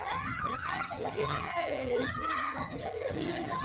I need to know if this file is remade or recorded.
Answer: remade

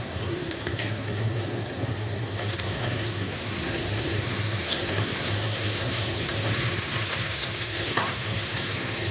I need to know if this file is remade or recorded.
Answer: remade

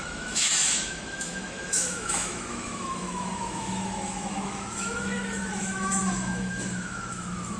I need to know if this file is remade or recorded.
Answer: remade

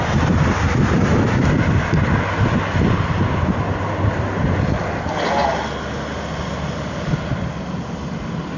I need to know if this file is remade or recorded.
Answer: recorded